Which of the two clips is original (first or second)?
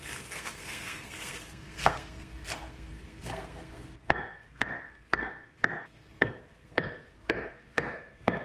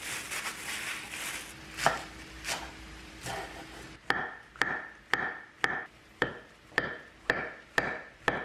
second